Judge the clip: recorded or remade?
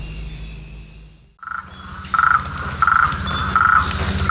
recorded